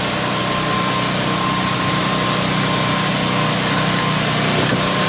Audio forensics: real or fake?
real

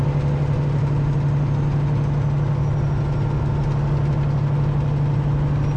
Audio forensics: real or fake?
real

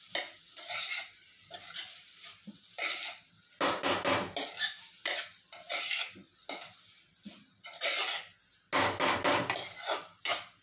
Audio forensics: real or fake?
real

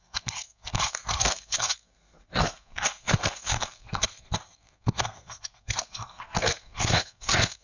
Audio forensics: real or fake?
fake